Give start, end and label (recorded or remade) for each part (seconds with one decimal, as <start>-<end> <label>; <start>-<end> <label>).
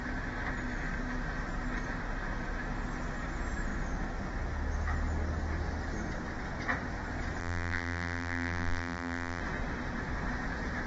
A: 0.0-7.4 recorded; 7.4-9.4 remade; 9.4-10.9 recorded